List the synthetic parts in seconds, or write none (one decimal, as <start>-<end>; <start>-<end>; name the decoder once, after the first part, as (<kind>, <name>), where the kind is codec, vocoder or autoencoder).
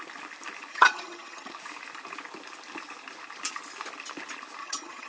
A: 0.7-1.5 (vocoder, HiFi-GAN); 4.6-5.1